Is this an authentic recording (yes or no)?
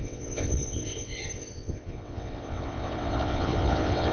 no